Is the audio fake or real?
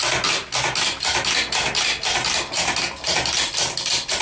real